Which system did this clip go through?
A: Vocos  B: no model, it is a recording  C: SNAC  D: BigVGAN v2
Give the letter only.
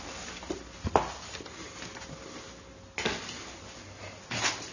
B